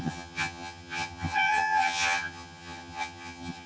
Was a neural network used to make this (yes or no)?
yes